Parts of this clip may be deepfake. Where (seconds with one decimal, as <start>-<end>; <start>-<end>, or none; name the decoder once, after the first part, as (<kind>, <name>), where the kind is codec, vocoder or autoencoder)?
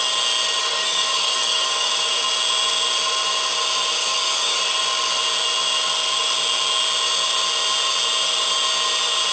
0.6-1.9 (codec, DAC); 4.0-4.6